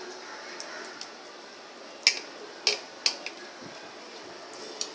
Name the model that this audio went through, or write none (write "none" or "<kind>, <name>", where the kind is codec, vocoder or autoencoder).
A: none